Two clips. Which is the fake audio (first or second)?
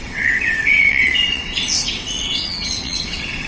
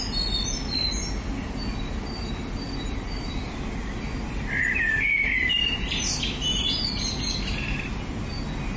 first